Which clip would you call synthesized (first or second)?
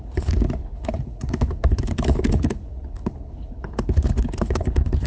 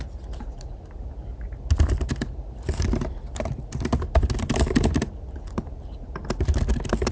first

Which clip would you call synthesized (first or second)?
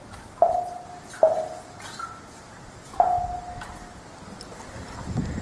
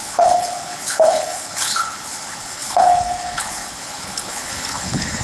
second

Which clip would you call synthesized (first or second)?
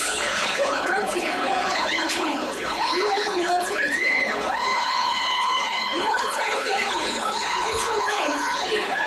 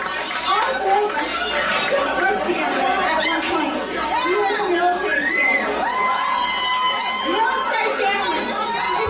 first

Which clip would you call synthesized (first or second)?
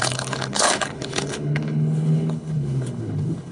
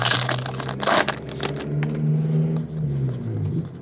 first